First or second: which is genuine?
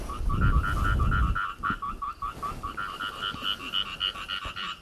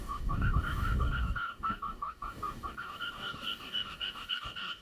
first